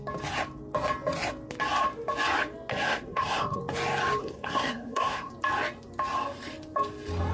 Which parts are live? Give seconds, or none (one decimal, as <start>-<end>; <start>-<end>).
0.0-2.7; 3.6-4.2; 5.3-7.3